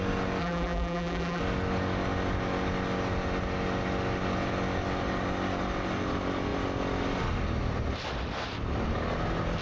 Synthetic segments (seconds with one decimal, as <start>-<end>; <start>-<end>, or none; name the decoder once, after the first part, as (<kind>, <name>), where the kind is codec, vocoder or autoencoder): 0.4-1.4 (vocoder, BigVGAN v2)